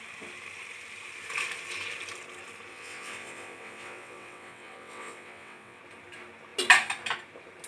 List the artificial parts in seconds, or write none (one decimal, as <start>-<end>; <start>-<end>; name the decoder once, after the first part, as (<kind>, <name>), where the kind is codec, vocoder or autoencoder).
2.7-5.8 (vocoder, WaveNeXt)